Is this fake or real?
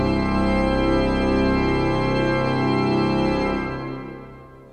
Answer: real